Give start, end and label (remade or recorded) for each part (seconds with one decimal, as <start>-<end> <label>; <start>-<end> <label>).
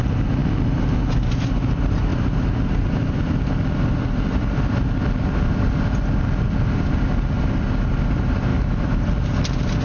0.0-8.5 recorded; 8.5-9.0 remade; 9.0-9.8 recorded